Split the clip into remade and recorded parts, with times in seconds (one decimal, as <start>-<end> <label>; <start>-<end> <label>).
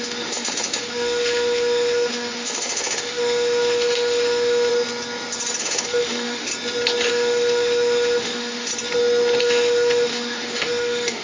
0.0-4.7 remade; 4.7-5.6 recorded; 5.6-6.5 remade; 6.5-7.1 recorded; 7.1-8.7 remade; 8.7-9.4 recorded; 9.4-11.2 remade